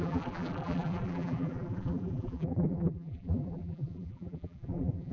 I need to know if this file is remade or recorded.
remade